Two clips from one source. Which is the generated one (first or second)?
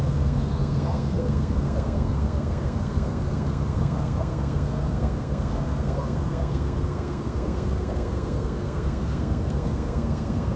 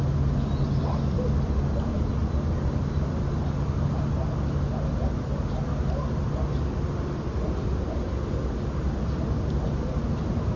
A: first